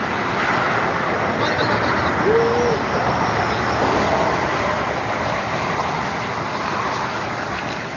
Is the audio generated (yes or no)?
no